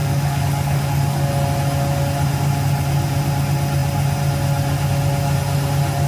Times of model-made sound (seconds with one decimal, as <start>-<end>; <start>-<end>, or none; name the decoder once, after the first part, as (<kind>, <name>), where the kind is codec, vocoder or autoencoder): 0.0-1.3 (codec, DAC)